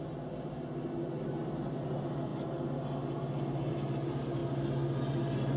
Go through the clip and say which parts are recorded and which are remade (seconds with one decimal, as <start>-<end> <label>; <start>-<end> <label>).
0.0-5.6 recorded